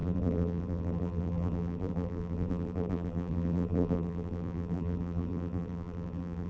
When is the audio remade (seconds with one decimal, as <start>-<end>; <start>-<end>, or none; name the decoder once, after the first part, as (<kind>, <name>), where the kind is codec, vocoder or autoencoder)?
0.0-6.5 (vocoder, BigVGAN v2)